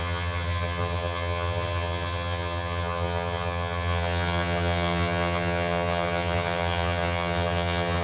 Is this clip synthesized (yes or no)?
yes